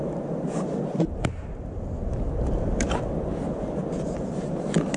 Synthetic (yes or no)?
no